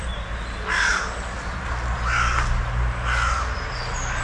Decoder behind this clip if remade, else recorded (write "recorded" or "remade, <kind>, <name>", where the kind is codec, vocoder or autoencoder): recorded